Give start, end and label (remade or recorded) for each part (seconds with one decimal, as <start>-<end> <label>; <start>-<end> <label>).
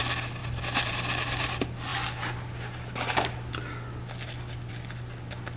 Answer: 0.0-5.6 recorded